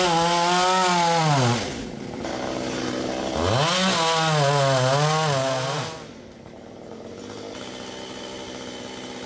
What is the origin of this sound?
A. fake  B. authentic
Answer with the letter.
B